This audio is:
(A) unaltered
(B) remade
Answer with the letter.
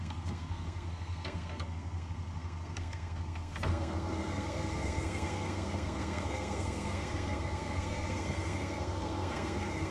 B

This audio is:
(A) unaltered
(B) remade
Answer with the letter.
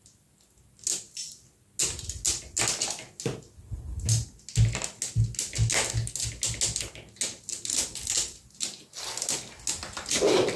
A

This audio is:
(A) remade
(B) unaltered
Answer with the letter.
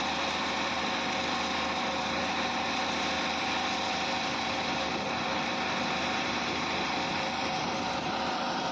A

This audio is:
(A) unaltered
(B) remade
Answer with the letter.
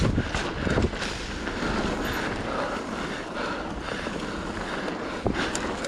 A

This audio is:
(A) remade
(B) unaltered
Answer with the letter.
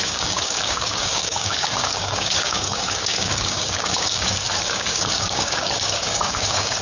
A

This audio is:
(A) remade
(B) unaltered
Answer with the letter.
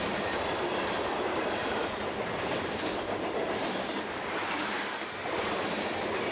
A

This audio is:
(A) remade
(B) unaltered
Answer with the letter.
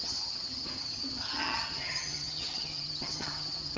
A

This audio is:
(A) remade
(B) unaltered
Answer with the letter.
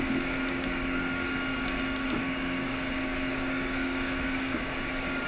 A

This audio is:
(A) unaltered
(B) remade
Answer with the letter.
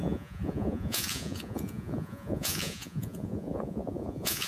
B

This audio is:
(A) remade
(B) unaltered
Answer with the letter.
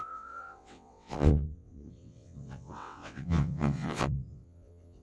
A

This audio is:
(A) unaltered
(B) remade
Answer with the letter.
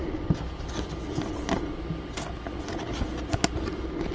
A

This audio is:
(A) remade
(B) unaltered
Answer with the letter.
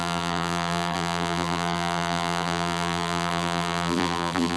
A